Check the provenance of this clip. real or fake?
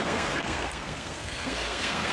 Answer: fake